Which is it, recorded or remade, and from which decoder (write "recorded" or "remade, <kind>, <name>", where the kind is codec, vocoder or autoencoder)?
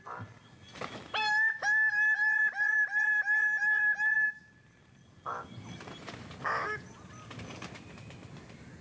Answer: recorded